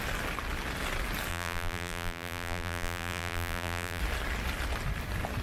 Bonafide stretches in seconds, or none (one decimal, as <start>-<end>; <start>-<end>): 0.0-1.3; 4.0-5.4